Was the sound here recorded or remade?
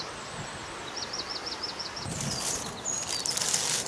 recorded